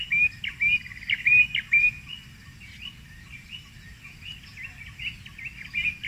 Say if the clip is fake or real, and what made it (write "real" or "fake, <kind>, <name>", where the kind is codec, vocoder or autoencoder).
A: real